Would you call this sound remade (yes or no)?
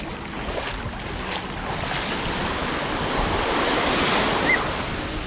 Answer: no